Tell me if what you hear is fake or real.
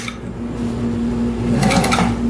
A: real